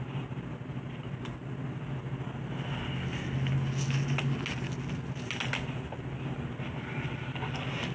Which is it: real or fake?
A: real